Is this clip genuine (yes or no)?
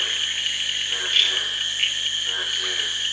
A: yes